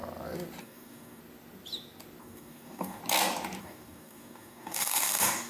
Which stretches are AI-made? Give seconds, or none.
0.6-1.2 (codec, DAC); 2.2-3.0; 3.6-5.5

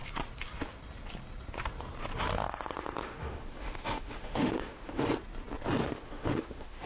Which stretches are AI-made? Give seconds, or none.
3.0-5.0 (autoencoder, DAC-VAE); 5.8-6.9